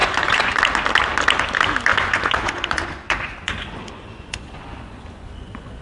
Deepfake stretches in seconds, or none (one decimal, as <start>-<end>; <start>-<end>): 0.0-0.6; 1.9-5.8